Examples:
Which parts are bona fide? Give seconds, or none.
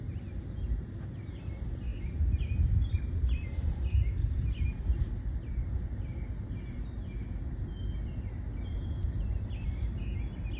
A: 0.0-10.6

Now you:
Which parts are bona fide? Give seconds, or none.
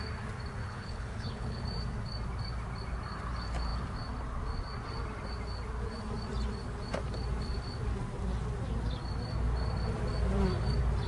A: 0.0-0.6; 1.6-11.1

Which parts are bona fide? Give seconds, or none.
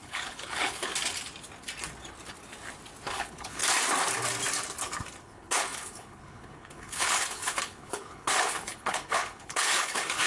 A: 0.9-3.1; 3.6-5.2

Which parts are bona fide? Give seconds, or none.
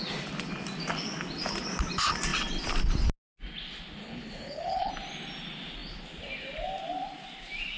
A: 0.0-4.0; 4.9-7.8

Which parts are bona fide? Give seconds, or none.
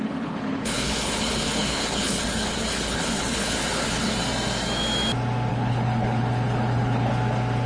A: 4.1-5.5; 7.1-7.7